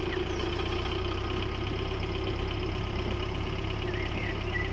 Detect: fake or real real